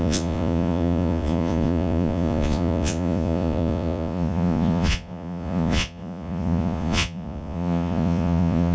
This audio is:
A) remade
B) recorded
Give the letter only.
A